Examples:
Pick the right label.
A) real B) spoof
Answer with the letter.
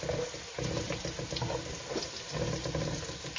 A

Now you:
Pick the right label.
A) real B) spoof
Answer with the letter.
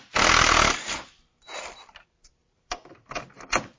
B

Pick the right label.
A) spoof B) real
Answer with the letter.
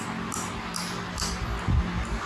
B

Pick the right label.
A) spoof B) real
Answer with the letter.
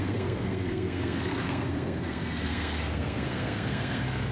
A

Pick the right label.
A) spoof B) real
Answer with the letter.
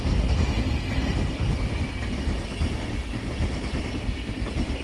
B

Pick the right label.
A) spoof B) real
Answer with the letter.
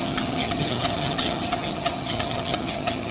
A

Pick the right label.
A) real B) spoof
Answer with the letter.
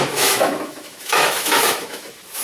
B